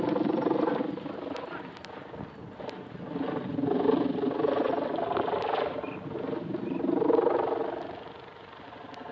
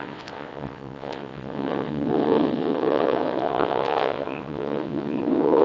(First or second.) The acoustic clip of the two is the first